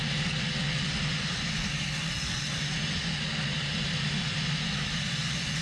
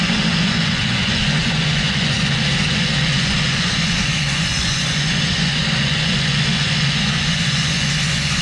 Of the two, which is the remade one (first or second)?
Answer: second